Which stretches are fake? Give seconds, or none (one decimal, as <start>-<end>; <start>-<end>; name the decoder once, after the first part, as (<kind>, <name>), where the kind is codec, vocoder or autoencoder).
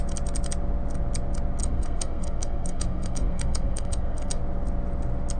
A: 1.6-4.4 (codec, SNAC)